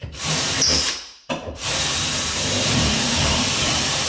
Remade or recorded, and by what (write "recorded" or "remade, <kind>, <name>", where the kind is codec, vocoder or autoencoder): remade, vocoder, BigVGAN v2